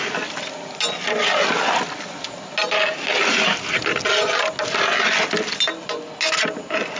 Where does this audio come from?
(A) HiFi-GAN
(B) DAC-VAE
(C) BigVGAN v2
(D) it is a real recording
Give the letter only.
D